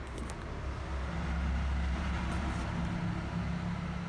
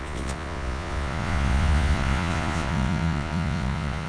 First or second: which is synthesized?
second